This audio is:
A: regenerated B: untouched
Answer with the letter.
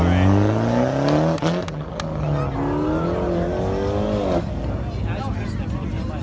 B